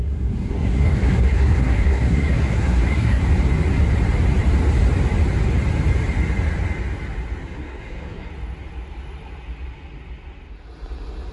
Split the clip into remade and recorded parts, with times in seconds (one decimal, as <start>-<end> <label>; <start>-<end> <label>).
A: 0.0-3.2 remade; 3.2-7.4 recorded; 7.4-8.3 remade; 8.3-11.3 recorded